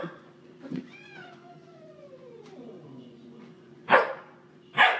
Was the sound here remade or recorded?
remade